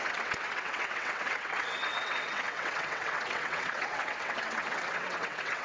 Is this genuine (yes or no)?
no